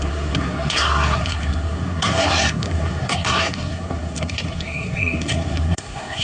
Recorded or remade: remade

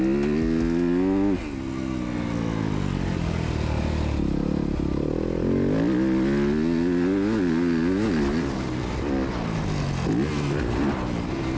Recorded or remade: recorded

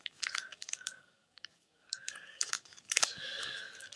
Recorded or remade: remade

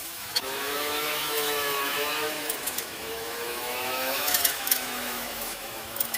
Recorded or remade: remade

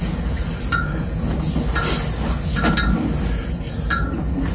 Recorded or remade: recorded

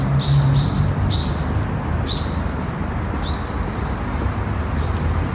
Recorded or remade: recorded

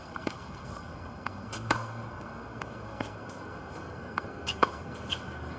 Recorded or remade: remade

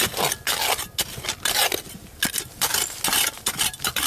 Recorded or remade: recorded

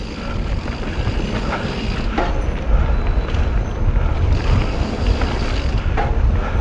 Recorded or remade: recorded